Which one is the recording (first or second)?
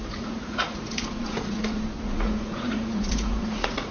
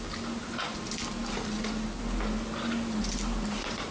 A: second